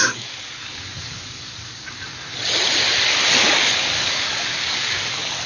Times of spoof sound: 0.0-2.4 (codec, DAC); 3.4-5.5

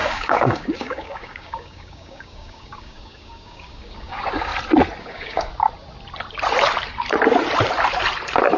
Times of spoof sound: 0.0-4.5 (codec, DAC); 5.0-5.5

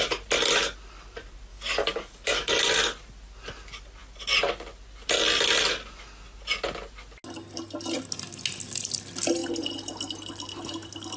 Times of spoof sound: 1.5-2.5 (codec, DAC)

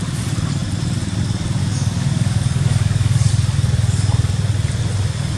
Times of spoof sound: 1.6-3.3 (codec, DAC)